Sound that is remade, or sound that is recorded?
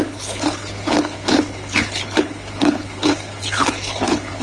remade